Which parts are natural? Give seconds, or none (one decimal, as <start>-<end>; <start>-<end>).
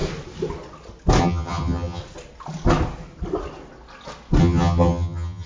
0.0-1.2; 2.0-4.4